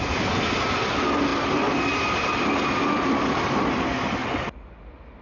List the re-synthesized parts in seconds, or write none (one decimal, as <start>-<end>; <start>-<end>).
none